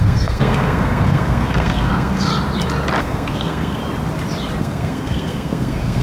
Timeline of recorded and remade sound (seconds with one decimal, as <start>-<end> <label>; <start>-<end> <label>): 0.0-2.3 remade; 2.3-3.0 recorded; 3.0-3.8 remade; 3.8-4.6 recorded; 4.6-6.0 remade